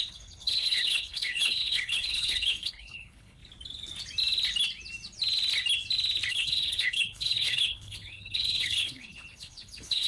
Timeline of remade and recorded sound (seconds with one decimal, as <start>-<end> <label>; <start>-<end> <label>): 0.0-3.4 remade; 3.4-6.3 recorded; 6.3-10.1 remade